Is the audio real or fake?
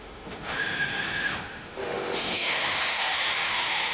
fake